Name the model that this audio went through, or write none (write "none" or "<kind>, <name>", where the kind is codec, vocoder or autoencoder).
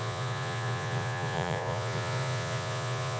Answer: vocoder, Vocos